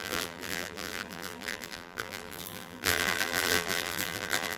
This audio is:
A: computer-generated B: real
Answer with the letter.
A